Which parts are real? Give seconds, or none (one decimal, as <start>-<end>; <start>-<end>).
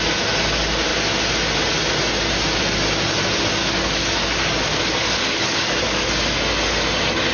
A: 0.0-3.6; 6.1-7.3